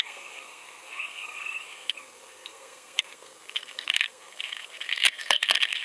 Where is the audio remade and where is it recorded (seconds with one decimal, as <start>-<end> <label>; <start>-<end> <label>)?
0.0-5.8 remade